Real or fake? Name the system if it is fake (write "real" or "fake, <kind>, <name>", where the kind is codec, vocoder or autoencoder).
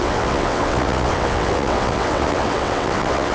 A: fake, vocoder, WaveNeXt